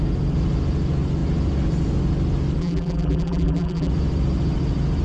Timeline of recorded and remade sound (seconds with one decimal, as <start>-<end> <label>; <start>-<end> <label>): 0.0-2.6 recorded; 2.6-3.9 remade; 3.9-5.0 recorded